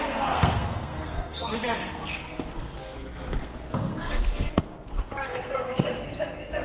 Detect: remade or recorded remade